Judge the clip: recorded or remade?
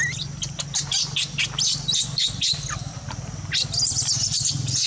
recorded